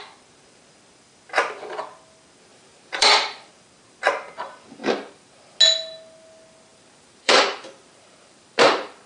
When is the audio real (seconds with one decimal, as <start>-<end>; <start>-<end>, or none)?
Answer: 0.0-2.5; 3.5-4.8; 5.4-6.7